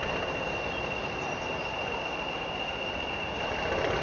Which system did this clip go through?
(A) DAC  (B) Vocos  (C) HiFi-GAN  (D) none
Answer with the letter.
D